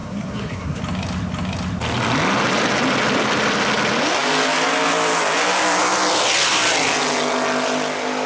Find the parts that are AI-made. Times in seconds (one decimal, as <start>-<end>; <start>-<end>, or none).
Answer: 0.0-0.8